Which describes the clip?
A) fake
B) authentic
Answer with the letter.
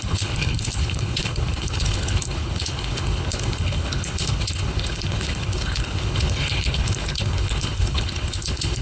A